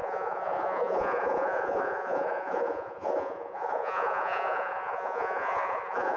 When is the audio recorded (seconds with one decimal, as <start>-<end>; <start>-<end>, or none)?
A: none